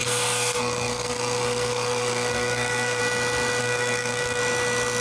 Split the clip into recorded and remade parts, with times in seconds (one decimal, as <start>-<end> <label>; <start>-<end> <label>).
0.0-3.0 remade; 3.0-3.6 recorded; 3.6-4.4 remade; 4.4-5.0 recorded